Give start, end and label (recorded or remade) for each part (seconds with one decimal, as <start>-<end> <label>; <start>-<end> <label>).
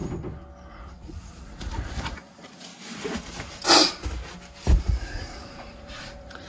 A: 0.0-0.7 recorded; 0.7-2.7 remade; 2.7-5.0 recorded; 5.0-6.5 remade